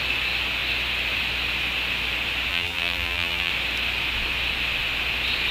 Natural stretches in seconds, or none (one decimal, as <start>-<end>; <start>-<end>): 0.0-2.5; 3.5-5.5